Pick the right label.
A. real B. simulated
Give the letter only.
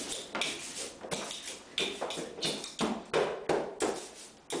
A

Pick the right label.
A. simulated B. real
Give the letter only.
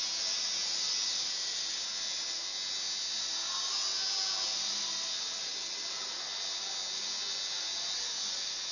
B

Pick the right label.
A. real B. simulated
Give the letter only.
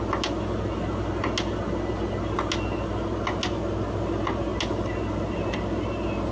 A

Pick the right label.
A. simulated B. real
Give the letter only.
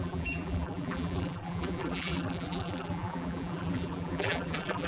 A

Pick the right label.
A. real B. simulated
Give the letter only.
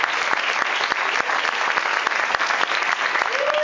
A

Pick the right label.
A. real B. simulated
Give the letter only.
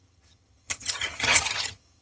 B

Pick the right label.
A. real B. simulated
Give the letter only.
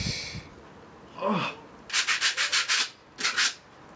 A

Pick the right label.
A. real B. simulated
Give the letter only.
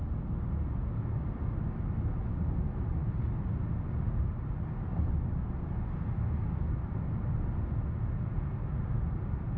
A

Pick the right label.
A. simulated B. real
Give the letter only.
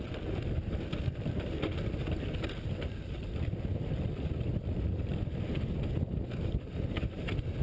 A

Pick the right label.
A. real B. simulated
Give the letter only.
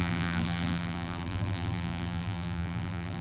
B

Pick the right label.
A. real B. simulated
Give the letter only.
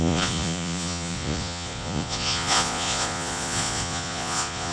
B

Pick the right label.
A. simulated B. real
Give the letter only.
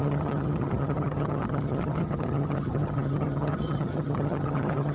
A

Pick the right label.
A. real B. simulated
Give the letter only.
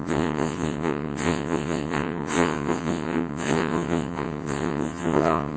B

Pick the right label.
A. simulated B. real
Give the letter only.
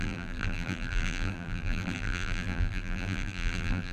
A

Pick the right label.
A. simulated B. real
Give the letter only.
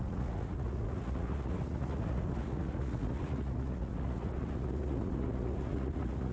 A